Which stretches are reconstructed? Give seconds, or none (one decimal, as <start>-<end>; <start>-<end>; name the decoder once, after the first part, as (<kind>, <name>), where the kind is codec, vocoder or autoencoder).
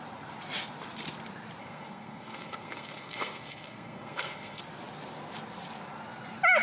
1.6-4.6 (codec, SNAC)